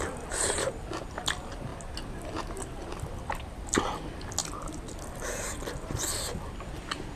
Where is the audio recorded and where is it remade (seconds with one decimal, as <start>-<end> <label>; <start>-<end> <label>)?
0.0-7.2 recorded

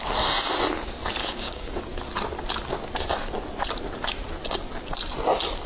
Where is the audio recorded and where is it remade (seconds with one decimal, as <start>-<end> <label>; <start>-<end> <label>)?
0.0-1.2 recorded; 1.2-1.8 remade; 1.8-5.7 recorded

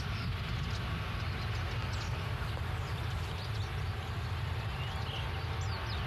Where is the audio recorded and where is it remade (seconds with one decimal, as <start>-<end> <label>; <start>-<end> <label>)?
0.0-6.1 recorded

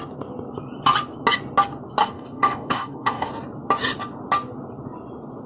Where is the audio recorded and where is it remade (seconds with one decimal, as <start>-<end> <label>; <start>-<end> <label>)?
0.0-2.0 recorded; 2.0-3.3 remade; 3.3-5.5 recorded

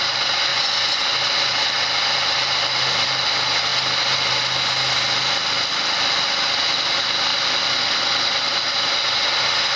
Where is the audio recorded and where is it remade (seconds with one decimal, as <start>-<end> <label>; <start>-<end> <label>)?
0.0-0.5 recorded; 0.5-1.0 remade; 1.0-9.8 recorded

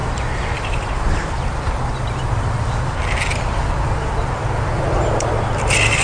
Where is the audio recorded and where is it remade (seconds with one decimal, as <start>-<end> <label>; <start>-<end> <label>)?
0.0-0.6 recorded; 0.6-1.9 remade; 1.9-3.2 recorded; 3.2-6.0 remade

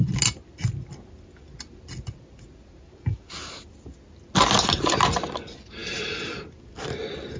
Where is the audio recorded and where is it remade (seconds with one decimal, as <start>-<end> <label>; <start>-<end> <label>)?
0.0-7.4 recorded

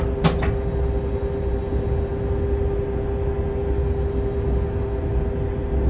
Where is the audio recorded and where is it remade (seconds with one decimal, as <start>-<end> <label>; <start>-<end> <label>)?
0.0-5.9 recorded